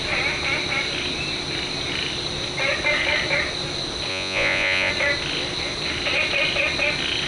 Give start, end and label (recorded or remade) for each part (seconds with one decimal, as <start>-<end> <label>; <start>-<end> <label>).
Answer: 0.0-4.1 recorded; 4.1-4.9 remade; 4.9-7.3 recorded